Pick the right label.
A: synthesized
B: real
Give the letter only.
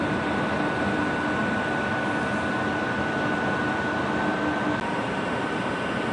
B